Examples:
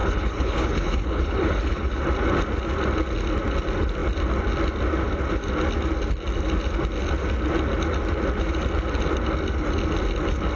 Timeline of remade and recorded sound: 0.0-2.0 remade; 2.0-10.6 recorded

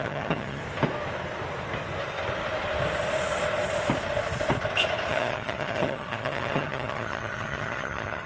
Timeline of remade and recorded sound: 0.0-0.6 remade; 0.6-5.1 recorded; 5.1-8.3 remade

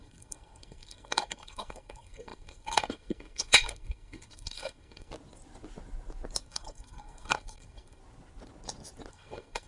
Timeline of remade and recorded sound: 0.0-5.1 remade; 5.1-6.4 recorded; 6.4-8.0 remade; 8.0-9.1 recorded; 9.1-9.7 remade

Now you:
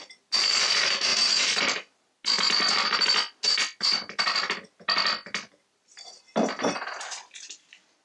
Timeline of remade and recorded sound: 0.0-8.0 recorded

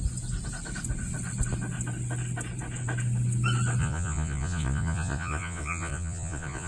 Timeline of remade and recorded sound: 0.0-3.8 recorded; 3.8-6.7 remade

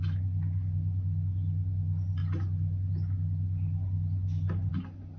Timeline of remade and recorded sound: 0.0-5.2 recorded

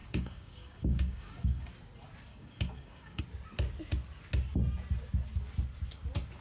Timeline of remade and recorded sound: 0.0-1.7 remade; 1.7-2.3 recorded; 2.3-3.2 remade; 3.2-6.4 recorded

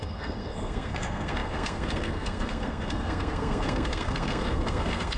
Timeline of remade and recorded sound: 0.0-5.2 remade